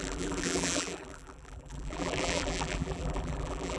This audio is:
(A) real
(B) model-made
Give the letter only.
B